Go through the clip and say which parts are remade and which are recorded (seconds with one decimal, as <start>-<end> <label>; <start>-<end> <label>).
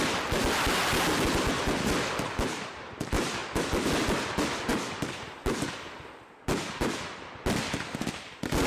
0.0-8.7 recorded